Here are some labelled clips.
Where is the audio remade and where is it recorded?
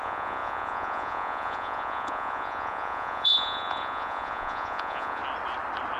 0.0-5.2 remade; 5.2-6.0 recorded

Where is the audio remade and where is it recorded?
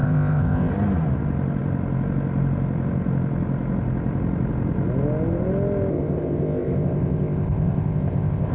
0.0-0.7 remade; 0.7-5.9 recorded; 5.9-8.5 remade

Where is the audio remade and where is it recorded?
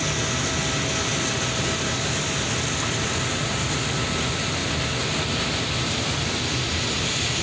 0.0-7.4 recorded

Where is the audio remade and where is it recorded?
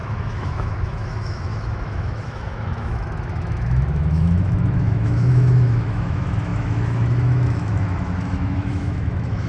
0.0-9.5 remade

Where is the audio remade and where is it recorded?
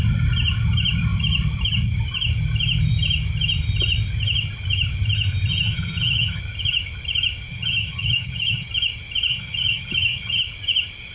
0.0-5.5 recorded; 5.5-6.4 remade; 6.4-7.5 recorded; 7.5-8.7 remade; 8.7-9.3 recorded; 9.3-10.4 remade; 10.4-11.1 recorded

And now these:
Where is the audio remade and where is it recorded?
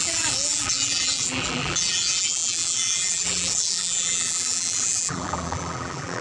0.0-6.2 remade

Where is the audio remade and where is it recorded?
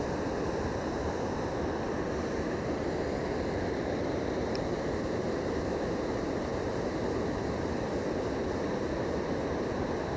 0.0-10.2 recorded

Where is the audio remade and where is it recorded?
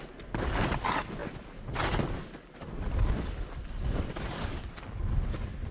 0.0-5.7 recorded